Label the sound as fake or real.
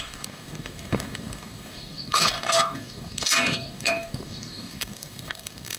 fake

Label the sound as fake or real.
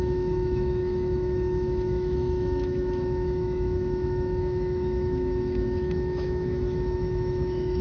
fake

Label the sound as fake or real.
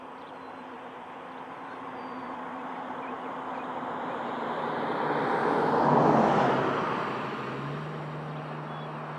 real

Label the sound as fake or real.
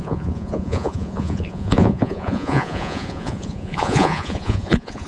fake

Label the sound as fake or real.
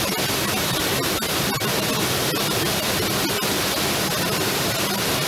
real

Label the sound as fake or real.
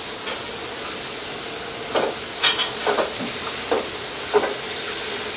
real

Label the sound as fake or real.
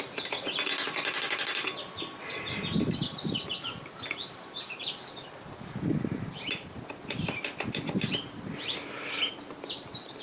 real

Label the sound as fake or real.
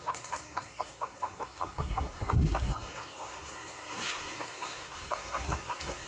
fake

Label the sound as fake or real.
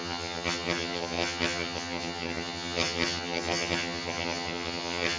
fake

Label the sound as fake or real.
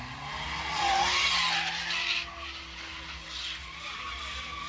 real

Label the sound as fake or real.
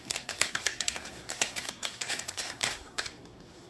fake